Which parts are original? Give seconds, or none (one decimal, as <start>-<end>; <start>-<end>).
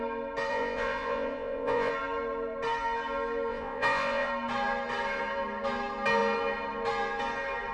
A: 0.0-0.5; 1.9-3.5; 4.3-7.7